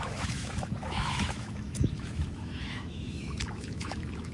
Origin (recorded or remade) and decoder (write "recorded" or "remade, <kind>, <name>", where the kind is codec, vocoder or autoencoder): remade, autoencoder, DAC-VAE